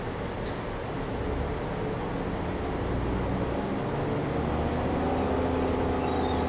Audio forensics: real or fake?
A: real